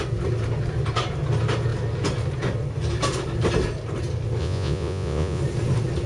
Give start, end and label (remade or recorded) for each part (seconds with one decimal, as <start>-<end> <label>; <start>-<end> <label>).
0.0-4.4 recorded; 4.4-5.4 remade; 5.4-6.1 recorded